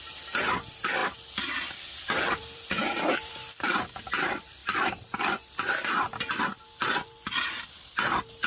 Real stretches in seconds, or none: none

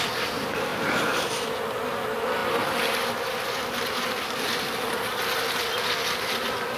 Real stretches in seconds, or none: 0.0-6.8

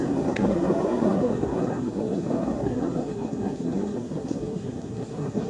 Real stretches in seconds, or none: none

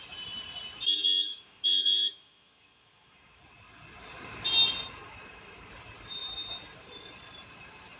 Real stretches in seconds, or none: 0.0-1.3; 3.4-5.0; 5.7-8.0

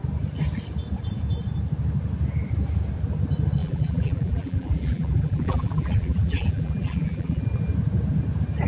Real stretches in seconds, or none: 0.0-3.6; 7.4-8.7

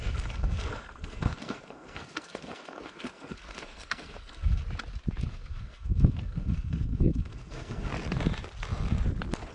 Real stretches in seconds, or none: 4.6-5.2; 7.9-9.5